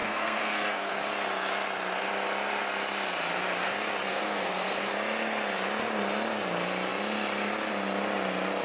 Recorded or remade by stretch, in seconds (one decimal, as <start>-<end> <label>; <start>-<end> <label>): 0.0-0.9 remade; 0.9-4.1 recorded; 4.1-4.9 remade; 4.9-8.6 recorded